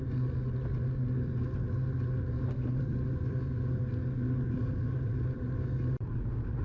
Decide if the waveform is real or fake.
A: real